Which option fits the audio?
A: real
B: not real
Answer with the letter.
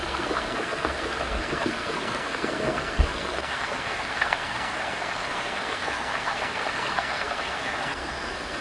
B